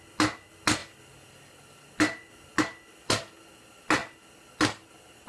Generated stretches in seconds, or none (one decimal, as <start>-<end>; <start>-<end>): none